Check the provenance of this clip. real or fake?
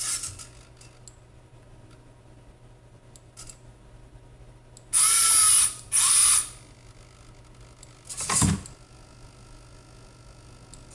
real